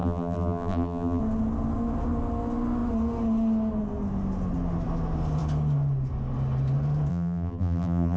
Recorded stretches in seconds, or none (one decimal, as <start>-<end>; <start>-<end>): 1.2-7.1